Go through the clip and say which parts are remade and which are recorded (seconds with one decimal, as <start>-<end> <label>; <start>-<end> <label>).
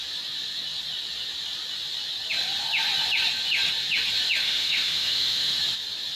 0.0-4.4 recorded; 4.4-5.6 remade; 5.6-6.2 recorded